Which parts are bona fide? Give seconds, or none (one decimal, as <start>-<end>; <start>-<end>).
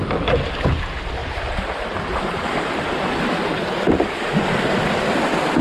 0.0-1.2; 2.8-5.6